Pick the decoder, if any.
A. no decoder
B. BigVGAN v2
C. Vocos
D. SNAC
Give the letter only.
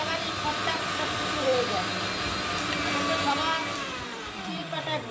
B